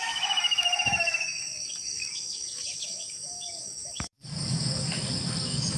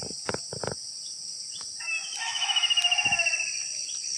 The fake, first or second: first